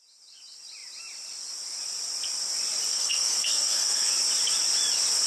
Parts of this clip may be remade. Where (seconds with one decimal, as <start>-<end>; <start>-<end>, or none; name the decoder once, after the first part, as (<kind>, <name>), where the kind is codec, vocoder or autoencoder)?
2.9-4.1 (codec, SNAC)

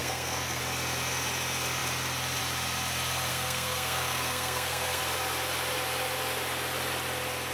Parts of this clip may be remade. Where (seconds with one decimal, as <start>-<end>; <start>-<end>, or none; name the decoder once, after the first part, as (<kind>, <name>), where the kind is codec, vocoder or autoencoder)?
0.0-0.6 (codec, SNAC); 3.3-5.0

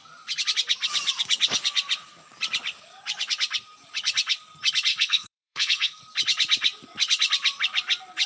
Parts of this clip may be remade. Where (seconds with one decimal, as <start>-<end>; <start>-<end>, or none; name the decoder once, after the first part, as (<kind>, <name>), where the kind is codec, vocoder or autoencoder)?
4.9-6.0 (codec, SNAC)

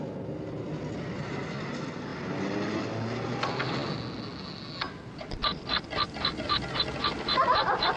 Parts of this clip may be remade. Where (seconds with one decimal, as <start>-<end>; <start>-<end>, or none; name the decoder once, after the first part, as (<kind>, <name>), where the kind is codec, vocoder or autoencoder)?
none

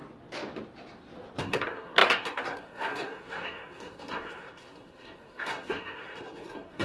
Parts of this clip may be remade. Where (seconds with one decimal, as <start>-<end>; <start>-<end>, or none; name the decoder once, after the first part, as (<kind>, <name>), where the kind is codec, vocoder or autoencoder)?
1.4-6.8 (codec, SNAC)

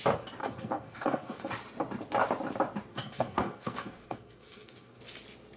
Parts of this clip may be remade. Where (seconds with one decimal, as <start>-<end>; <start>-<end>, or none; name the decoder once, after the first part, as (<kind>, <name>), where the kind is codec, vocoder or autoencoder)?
0.4-1.5 (codec, SNAC); 2.9-5.0

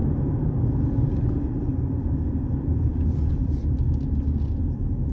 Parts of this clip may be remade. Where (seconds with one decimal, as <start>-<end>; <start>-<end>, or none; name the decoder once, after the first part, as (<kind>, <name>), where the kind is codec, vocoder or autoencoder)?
none

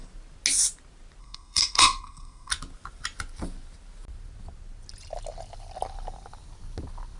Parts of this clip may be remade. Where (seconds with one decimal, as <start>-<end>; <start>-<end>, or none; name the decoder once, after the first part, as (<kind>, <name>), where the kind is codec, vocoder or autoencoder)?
1.2-2.5 (codec, SNAC)